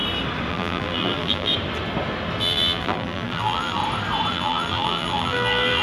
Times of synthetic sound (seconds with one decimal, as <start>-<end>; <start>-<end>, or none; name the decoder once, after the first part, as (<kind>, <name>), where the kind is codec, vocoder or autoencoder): 0.5-1.5 (vocoder, BigVGAN v2); 2.4-3.8; 4.3-5.8